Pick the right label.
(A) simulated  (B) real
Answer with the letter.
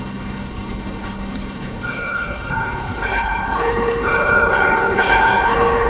A